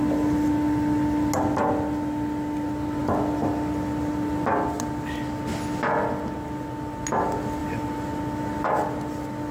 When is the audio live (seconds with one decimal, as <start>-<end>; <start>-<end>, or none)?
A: 0.0-7.6; 8.2-9.5